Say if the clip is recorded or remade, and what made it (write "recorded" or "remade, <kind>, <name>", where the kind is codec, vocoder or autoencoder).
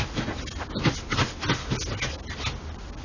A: recorded